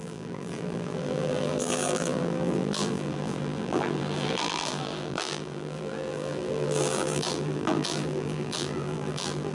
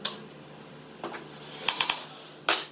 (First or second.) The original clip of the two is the second